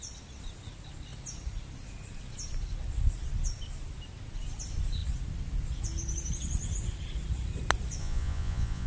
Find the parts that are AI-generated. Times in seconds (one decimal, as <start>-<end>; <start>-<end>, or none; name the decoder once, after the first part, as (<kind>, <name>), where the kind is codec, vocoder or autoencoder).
8.0-8.9 (vocoder, Vocos)